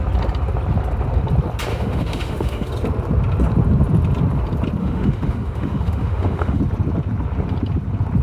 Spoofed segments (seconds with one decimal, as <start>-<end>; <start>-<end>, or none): 1.7-2.7; 4.8-6.6